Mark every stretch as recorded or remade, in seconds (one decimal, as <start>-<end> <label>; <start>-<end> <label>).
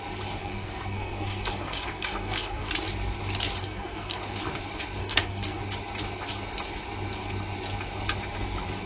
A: 0.0-0.4 recorded; 0.4-2.7 remade; 2.7-3.6 recorded; 3.6-4.2 remade; 4.2-5.0 recorded; 5.0-5.6 remade; 5.6-8.9 recorded